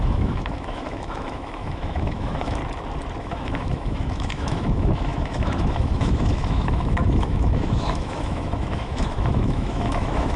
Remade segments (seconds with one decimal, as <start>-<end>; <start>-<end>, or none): 0.0-2.6; 3.2-10.4